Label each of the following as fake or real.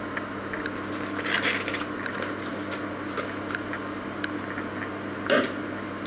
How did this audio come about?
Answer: real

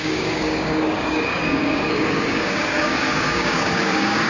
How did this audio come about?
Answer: fake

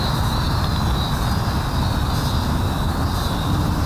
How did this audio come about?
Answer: real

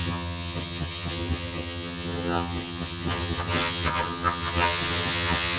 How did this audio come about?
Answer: fake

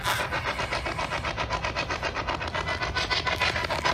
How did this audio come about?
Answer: real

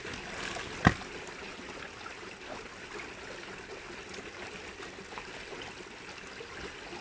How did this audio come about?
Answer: real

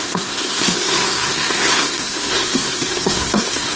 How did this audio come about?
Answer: fake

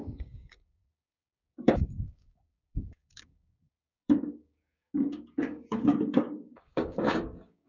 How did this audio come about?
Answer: fake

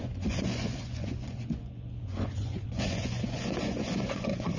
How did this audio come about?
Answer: fake